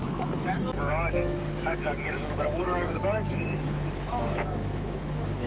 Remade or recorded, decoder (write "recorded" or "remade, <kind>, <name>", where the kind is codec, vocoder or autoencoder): remade, autoencoder, DAC-VAE